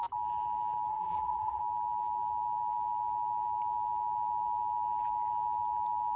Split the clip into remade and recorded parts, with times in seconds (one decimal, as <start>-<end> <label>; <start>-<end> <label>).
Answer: 0.0-0.9 recorded; 0.9-1.6 remade; 1.6-6.2 recorded